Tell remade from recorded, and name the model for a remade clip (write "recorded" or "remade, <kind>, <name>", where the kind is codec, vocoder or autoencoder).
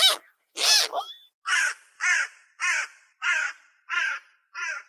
recorded